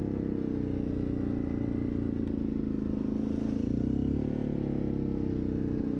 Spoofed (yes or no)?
no